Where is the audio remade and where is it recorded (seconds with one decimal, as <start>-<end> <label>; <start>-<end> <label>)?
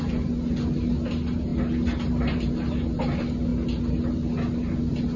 0.0-5.2 recorded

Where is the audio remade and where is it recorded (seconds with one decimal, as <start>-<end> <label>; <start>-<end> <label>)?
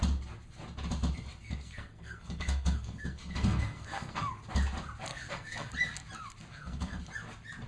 0.0-1.4 recorded; 1.4-4.3 remade; 4.3-5.1 recorded; 5.1-5.7 remade; 5.7-6.5 recorded; 6.5-7.0 remade; 7.0-7.7 recorded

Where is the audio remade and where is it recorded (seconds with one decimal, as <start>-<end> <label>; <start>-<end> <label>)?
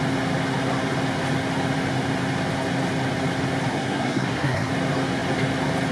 0.0-3.7 recorded; 3.7-4.7 remade; 4.7-5.9 recorded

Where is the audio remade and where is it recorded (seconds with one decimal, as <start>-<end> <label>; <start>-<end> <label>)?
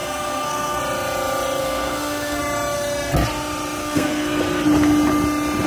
0.0-0.8 remade; 0.8-1.6 recorded; 1.6-2.4 remade; 2.4-3.8 recorded; 3.8-4.4 remade; 4.4-5.7 recorded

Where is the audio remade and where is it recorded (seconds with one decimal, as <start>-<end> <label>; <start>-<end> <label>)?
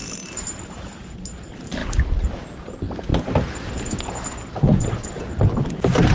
0.0-6.1 recorded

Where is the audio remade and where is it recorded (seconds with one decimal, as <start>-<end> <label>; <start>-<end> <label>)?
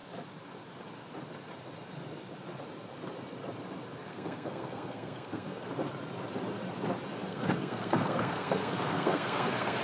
0.0-4.1 recorded; 4.1-5.6 remade; 5.6-7.3 recorded; 7.3-9.8 remade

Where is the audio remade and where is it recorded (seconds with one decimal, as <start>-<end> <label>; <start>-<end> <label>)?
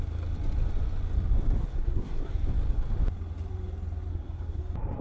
0.0-1.6 recorded; 1.6-2.3 remade; 2.3-4.1 recorded; 4.1-4.6 remade; 4.6-5.0 recorded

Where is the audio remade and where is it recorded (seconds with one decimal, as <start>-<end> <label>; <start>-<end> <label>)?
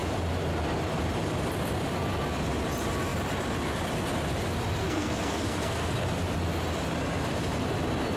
0.0-4.8 recorded; 4.8-5.9 remade; 5.9-8.2 recorded